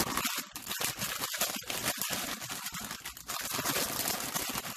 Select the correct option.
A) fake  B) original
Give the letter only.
B